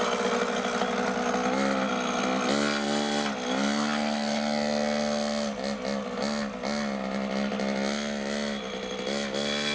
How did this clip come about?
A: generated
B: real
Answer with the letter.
B